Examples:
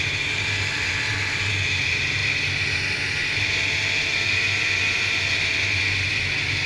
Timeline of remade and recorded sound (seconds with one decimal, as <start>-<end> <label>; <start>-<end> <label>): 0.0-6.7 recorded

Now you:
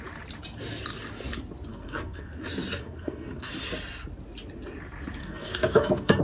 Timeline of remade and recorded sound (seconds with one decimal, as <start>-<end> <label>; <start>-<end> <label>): 0.0-1.7 recorded; 1.7-2.3 remade; 2.3-2.8 recorded; 2.8-3.5 remade; 3.5-5.2 recorded; 5.2-6.2 remade

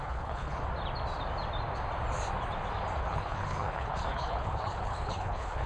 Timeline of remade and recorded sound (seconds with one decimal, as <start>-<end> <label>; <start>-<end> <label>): 0.0-0.6 remade; 0.6-3.0 recorded; 3.0-5.7 remade